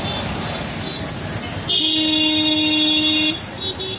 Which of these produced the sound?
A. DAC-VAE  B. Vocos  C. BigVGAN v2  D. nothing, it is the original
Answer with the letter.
D